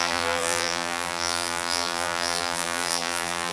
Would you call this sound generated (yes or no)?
yes